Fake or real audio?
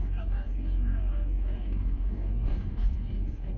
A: fake